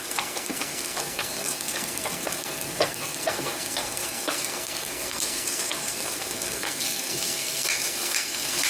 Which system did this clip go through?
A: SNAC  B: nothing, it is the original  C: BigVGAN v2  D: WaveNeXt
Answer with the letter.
A